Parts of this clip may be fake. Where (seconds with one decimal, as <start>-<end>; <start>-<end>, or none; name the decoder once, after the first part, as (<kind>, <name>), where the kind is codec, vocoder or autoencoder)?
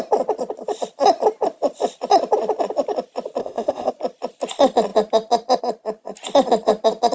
3.4-3.9 (codec, ZipCodec)